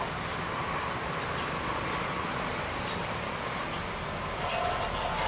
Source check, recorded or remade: recorded